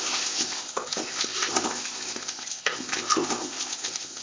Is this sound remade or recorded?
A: remade